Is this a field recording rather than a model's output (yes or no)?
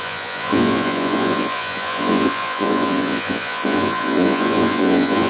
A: no